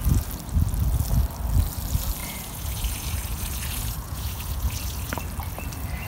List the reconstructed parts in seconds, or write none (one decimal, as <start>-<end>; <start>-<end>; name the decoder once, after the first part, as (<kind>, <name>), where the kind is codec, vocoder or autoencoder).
2.2-5.2 (vocoder, Vocos)